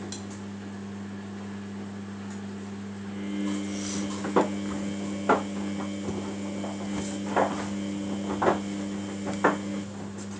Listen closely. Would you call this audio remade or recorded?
recorded